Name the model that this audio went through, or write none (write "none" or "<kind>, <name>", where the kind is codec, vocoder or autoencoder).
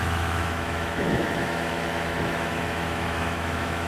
autoencoder, DAC-VAE